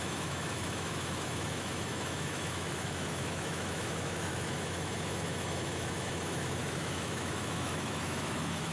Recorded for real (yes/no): no